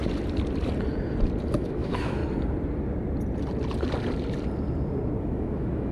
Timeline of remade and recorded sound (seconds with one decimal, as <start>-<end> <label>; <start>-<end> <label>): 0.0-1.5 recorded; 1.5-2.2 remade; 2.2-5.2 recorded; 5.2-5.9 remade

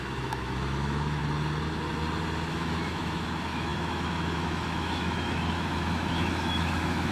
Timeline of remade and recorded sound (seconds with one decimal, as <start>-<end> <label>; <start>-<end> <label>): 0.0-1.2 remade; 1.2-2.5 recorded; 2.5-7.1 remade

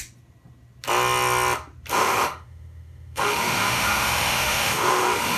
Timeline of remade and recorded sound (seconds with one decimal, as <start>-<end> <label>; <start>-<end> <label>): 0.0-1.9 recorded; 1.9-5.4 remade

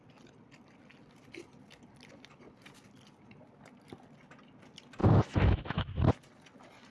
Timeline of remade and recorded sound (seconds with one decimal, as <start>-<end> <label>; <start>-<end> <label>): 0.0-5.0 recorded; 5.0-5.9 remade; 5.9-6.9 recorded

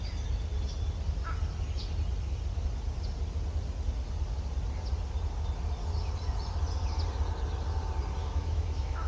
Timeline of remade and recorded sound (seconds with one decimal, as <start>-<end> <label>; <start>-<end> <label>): 0.0-8.2 recorded; 8.2-9.1 remade

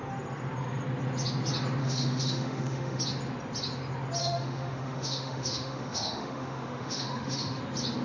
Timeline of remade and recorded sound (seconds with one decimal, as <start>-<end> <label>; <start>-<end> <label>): 0.0-1.8 recorded; 1.8-3.0 remade; 3.0-4.2 recorded; 4.2-7.6 remade; 7.6-8.0 recorded